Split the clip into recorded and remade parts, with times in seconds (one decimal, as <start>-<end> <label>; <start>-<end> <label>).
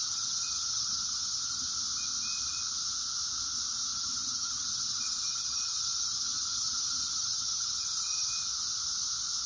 0.0-1.7 remade; 1.7-3.9 recorded; 3.9-8.3 remade; 8.3-9.5 recorded